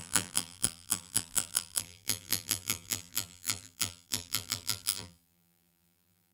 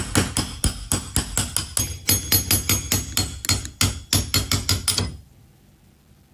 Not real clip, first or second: first